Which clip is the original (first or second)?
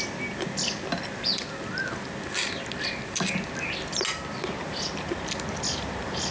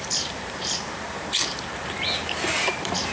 first